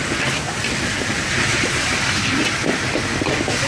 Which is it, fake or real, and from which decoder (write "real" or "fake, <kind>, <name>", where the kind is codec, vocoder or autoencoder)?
real